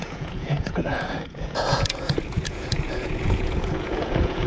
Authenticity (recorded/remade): remade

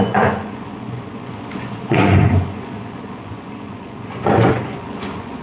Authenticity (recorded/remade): remade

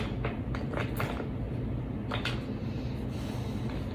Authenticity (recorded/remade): recorded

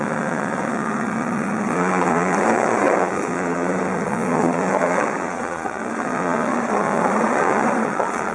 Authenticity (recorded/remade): remade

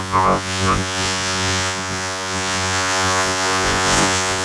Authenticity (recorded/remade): remade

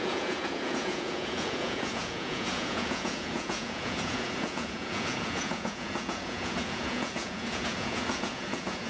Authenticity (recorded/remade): remade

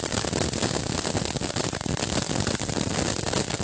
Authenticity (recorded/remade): recorded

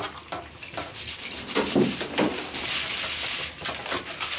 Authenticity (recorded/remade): recorded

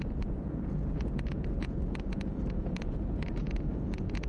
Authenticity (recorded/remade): remade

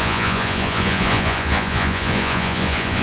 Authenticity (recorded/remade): remade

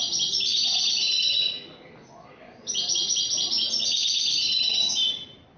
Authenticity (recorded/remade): recorded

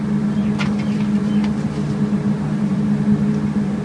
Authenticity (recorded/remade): recorded